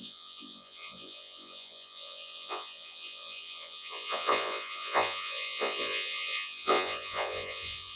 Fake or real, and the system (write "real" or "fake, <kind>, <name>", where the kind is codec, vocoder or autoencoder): fake, vocoder, Vocos